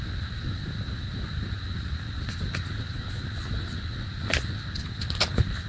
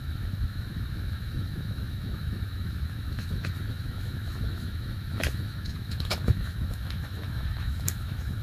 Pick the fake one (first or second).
second